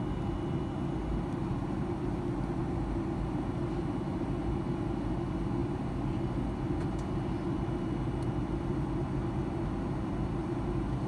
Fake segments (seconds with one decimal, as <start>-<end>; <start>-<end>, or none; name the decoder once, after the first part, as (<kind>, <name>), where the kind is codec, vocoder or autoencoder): none